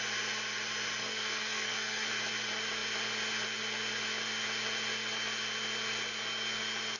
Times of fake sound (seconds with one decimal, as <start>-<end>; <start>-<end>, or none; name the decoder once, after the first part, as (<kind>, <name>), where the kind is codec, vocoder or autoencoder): 1.0-2.1 (codec, SNAC)